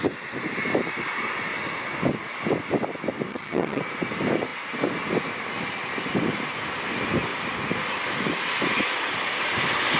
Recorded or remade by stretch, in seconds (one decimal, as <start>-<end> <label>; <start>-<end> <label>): 0.0-3.3 recorded; 3.3-3.8 remade; 3.8-10.0 recorded